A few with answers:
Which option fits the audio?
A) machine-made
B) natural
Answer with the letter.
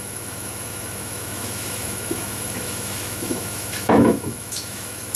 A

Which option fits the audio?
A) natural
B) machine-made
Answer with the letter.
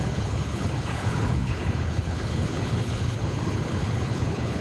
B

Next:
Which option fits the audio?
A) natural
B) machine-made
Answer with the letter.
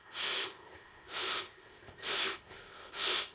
B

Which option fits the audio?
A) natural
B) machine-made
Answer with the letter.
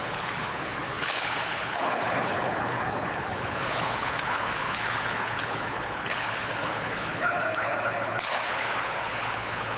B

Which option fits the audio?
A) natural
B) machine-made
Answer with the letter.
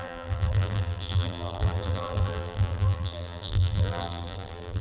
B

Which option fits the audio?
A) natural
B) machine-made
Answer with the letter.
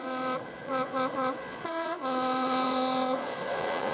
B